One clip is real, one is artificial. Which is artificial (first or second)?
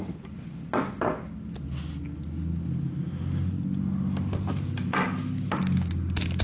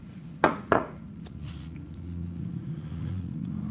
second